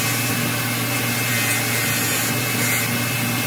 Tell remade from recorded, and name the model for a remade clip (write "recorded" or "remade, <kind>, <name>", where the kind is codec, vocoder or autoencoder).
recorded